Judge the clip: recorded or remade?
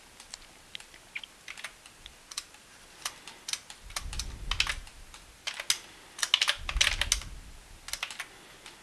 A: recorded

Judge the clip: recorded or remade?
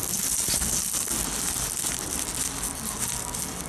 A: recorded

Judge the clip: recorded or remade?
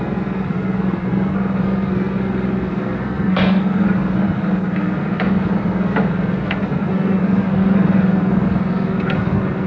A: remade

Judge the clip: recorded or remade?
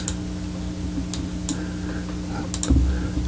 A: recorded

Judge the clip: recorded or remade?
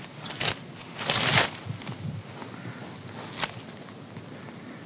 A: recorded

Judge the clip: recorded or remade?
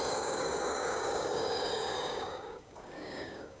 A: remade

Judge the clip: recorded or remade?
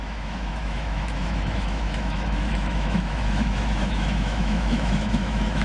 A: remade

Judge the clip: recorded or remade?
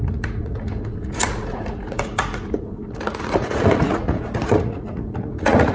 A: remade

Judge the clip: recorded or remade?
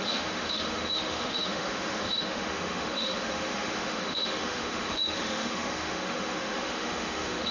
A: remade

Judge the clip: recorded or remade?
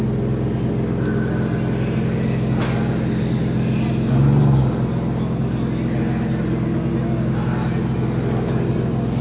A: recorded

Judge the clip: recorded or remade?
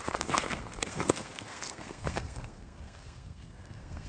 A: remade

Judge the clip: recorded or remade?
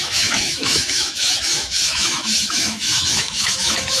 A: remade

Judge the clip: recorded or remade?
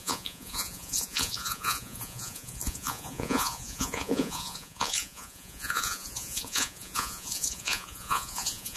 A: remade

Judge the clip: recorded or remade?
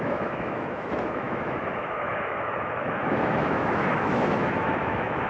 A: remade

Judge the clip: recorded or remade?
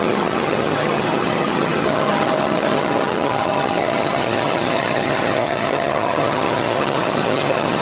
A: remade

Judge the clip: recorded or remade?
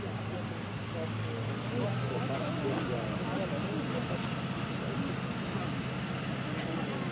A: recorded